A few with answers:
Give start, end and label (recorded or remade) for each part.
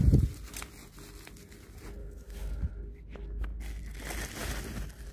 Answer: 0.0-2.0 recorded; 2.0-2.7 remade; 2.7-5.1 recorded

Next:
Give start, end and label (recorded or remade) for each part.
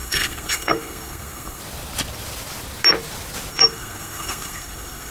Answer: 0.0-1.6 remade; 1.6-3.5 recorded; 3.5-5.1 remade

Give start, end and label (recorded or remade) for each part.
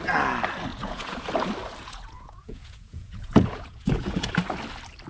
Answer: 0.0-0.7 recorded; 0.7-1.3 remade; 1.3-1.8 recorded; 1.8-4.3 remade; 4.3-5.1 recorded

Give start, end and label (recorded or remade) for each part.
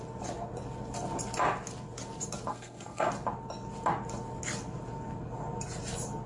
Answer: 0.0-2.5 recorded; 2.5-3.1 remade; 3.1-6.3 recorded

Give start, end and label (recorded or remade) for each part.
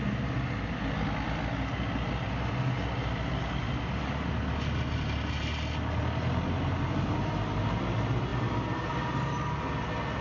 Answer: 0.0-10.2 recorded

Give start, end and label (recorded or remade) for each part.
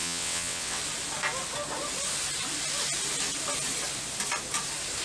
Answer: 0.0-0.8 remade; 0.8-5.0 recorded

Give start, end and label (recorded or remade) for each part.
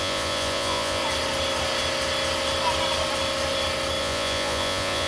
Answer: 0.0-1.0 remade; 1.0-4.0 recorded; 4.0-5.1 remade